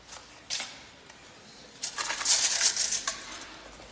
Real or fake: fake